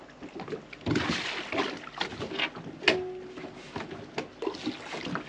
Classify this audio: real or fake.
real